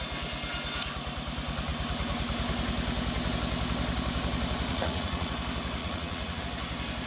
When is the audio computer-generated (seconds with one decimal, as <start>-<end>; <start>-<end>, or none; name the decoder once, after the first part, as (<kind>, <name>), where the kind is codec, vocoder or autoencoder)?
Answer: 4.7-5.3 (vocoder, Vocos); 5.8-6.4